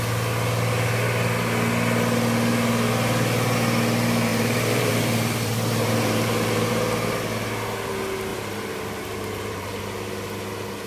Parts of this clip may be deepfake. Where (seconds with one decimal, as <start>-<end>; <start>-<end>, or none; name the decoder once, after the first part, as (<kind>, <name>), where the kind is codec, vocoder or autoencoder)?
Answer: 4.3-6.7 (vocoder, BigVGAN v2); 8.3-9.8